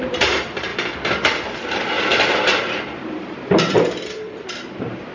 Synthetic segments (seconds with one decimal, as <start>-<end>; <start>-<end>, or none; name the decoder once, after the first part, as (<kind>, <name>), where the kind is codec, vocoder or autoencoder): 0.0-0.7 (vocoder, BigVGAN v2); 3.5-5.1